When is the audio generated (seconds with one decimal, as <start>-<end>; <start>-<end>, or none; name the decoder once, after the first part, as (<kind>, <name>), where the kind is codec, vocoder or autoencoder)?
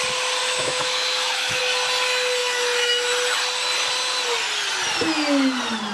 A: 0.4-1.6 (autoencoder, DAC-VAE); 2.4-3.1